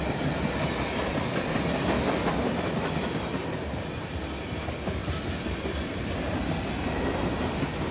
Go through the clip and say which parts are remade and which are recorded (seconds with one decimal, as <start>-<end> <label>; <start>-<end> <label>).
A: 0.0-7.9 recorded